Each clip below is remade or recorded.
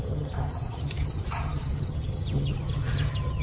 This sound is remade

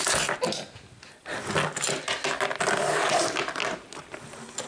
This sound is recorded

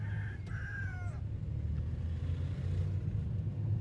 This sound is recorded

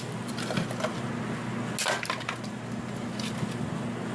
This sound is recorded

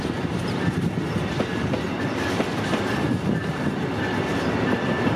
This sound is recorded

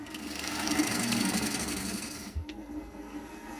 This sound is remade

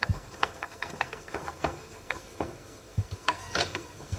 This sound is remade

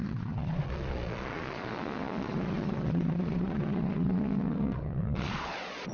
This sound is remade